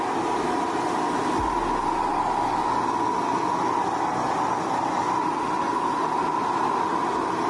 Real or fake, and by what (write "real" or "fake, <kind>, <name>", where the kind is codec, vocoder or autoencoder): real